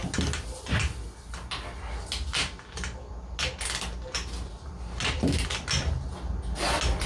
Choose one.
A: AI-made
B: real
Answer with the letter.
B